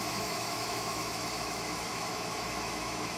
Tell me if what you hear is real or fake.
fake